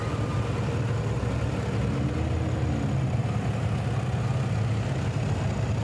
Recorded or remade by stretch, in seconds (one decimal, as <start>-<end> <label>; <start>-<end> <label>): 0.0-5.8 recorded